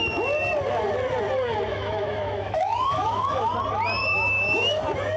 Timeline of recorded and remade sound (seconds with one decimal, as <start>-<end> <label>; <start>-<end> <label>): 0.0-1.7 recorded; 1.7-3.5 remade; 3.5-4.0 recorded; 4.0-4.8 remade; 4.8-5.2 recorded